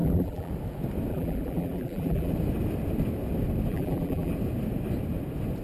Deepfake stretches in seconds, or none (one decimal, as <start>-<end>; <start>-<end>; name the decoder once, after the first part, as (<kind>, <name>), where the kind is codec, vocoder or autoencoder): 0.0-0.5 (vocoder, BigVGAN v2); 1.1-2.3; 3.7-4.3